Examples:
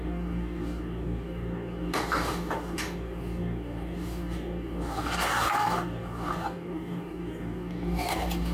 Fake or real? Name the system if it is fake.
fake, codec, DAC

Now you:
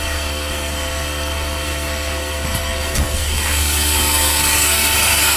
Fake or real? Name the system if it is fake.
fake, codec, SNAC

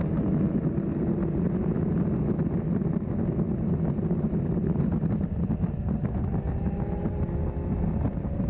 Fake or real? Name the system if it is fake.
real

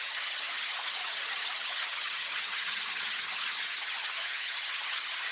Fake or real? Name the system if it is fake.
fake, vocoder, HiFi-GAN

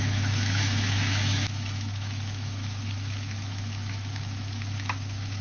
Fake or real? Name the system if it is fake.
fake, autoencoder, DAC-VAE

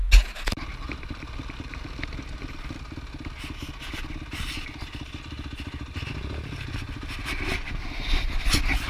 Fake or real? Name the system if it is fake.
real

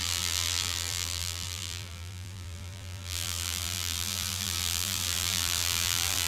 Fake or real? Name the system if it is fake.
fake, vocoder, BigVGAN v2